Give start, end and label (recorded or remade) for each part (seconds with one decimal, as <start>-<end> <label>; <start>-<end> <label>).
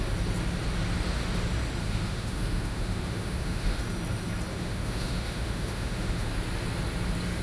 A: 0.0-1.8 recorded; 1.8-3.8 remade; 3.8-4.5 recorded; 4.5-6.3 remade; 6.3-7.4 recorded